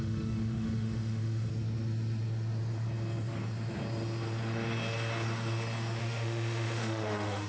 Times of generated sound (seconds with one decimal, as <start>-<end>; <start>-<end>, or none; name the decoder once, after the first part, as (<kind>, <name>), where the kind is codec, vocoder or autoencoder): 0.0-1.5 (autoencoder, DAC-VAE); 6.0-7.5